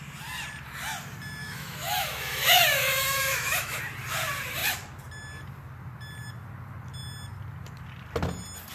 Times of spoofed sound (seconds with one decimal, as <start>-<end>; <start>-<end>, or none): 1.4-3.8